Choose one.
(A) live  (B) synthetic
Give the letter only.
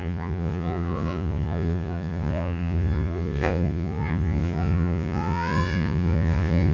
B